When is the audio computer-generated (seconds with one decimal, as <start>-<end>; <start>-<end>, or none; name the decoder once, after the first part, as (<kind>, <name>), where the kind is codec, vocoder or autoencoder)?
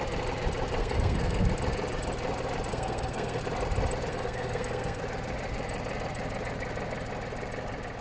0.8-1.5 (codec, SNAC); 2.7-3.4; 4.1-5.0